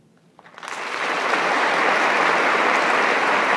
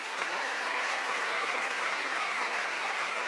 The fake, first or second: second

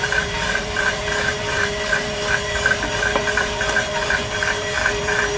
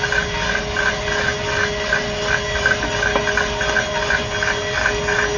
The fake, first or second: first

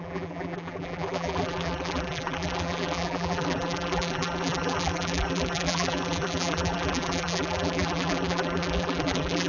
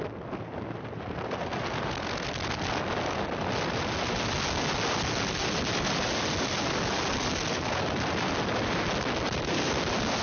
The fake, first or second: first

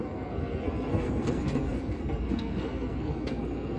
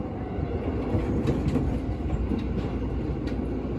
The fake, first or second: first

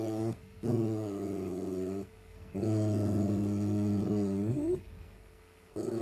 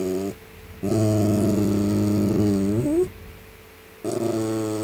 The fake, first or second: first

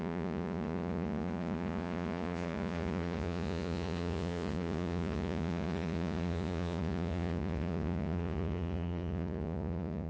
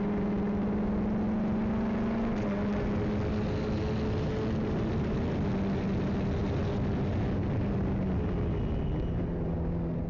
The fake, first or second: first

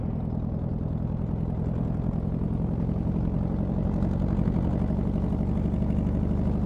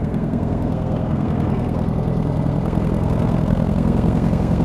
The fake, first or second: second